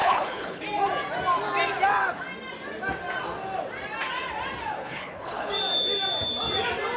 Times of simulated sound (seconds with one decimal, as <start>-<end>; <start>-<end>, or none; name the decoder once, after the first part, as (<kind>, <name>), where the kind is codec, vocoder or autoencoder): 0.0-0.6 (codec, HILCodec); 4.8-5.5